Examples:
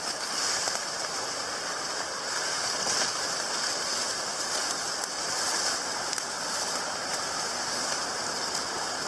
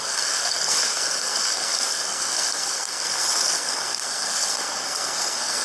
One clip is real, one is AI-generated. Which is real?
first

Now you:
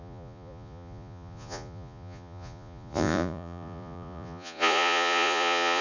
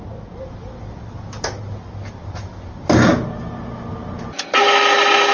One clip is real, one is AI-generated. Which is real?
second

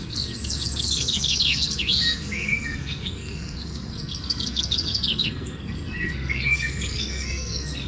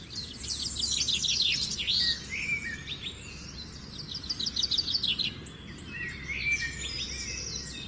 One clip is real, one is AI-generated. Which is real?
second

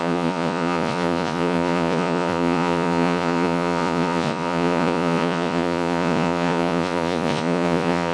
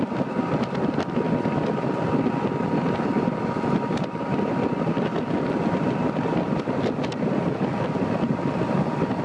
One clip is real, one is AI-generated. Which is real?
second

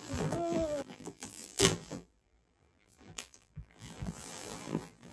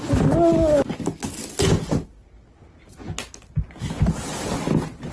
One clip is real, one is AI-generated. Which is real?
second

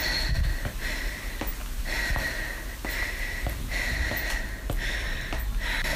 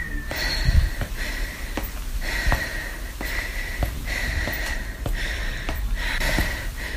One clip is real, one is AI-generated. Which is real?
first